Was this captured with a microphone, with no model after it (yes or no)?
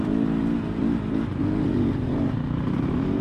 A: no